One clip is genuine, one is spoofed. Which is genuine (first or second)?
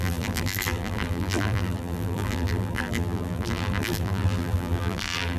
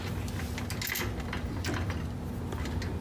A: second